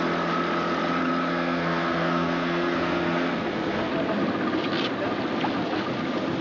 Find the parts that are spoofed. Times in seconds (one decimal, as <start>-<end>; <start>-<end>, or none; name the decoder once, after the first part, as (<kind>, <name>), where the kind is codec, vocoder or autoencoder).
1.3-3.9 (codec, SNAC)